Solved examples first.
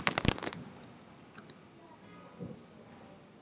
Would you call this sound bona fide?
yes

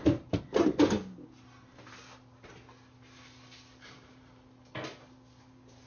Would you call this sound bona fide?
yes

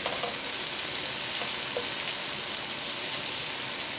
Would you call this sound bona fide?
yes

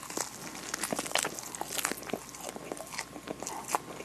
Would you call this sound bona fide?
yes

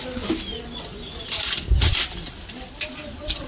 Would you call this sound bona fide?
yes